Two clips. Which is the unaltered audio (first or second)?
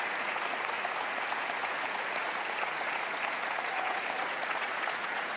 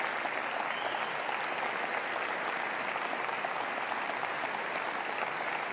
second